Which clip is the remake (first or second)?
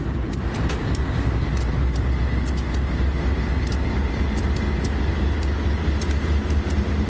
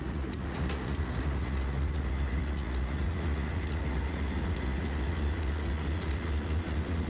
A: second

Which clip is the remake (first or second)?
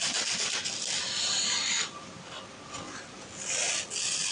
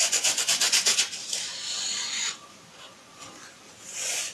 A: second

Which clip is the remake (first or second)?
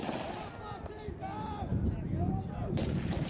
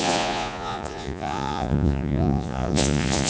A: second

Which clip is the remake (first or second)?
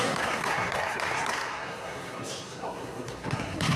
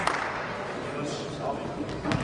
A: first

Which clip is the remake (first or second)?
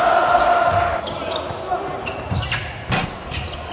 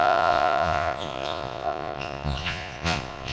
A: second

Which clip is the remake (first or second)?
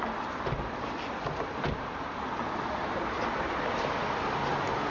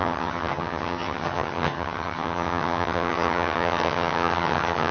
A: second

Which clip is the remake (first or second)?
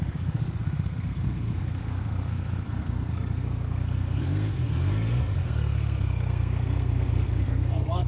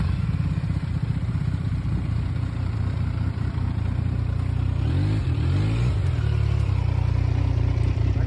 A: first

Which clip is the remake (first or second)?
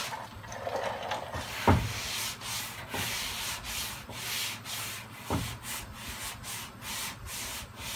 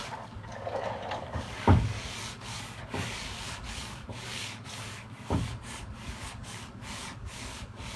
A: second